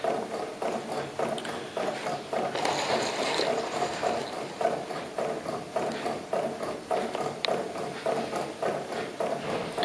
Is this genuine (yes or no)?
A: yes